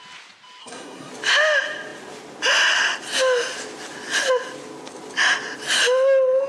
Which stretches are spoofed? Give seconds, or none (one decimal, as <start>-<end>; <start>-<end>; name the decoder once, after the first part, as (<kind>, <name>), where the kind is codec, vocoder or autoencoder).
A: 0.6-1.1 (codec, SNAC)